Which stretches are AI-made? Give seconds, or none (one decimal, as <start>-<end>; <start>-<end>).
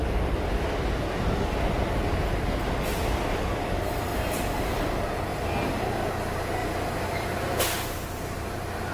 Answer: 5.3-6.1; 6.6-8.9